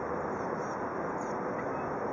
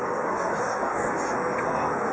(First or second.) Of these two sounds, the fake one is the second